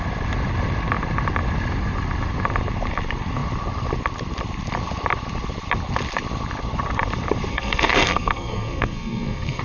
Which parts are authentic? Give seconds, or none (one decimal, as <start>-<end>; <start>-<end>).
0.0-7.5